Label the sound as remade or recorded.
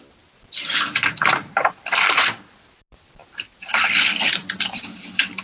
recorded